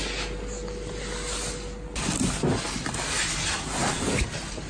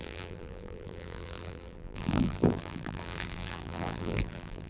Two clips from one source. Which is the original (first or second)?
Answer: first